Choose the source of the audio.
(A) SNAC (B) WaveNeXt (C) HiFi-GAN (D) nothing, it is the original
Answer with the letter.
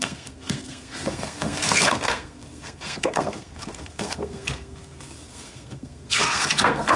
A